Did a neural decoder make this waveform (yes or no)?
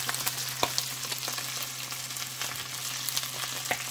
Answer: no